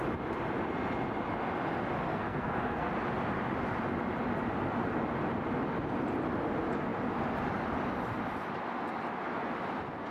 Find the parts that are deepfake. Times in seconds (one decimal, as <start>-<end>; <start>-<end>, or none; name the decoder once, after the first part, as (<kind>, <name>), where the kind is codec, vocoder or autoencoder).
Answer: 2.1-2.9 (codec, SNAC)